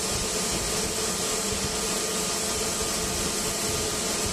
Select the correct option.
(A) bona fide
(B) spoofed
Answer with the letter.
A